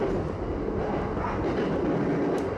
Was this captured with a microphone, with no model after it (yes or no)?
yes